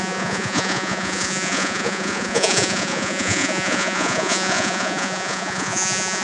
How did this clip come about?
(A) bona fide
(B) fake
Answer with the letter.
B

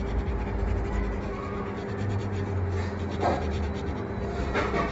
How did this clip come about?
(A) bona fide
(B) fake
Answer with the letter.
A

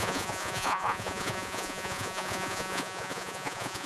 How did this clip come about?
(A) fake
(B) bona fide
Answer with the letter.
A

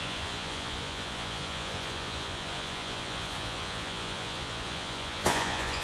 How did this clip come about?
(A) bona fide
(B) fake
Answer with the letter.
B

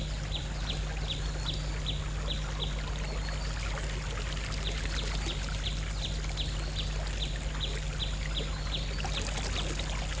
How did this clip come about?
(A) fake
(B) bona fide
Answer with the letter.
B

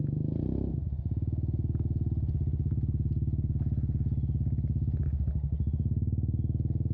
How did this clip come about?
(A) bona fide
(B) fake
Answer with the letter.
A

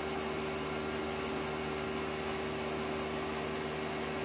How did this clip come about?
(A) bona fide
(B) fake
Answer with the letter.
A